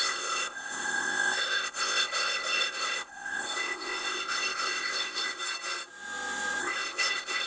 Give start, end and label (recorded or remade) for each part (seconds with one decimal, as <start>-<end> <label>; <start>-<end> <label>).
0.0-5.4 remade; 5.4-6.6 recorded; 6.6-7.5 remade